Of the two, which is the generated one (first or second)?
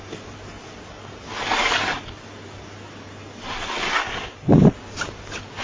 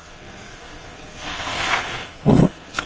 second